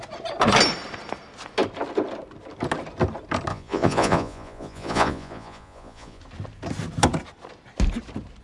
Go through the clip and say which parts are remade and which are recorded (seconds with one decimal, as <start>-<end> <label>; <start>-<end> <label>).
0.0-3.5 recorded; 3.5-6.2 remade; 6.2-8.4 recorded